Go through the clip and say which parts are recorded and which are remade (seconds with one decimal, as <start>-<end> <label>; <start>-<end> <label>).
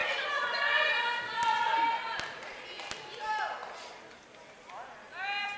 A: 0.0-5.6 recorded